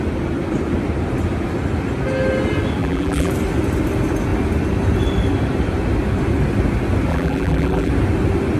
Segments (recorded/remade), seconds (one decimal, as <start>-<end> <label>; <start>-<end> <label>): 0.0-2.8 recorded; 2.8-3.3 remade; 3.3-7.1 recorded; 7.1-7.9 remade; 7.9-8.6 recorded